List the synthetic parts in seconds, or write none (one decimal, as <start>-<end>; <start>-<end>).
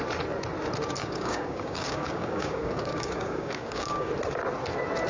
1.0-4.1